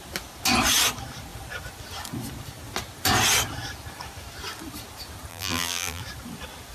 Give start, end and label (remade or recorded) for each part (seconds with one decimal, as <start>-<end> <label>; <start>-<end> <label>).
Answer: 0.0-5.3 recorded; 5.3-6.0 remade; 6.0-6.7 recorded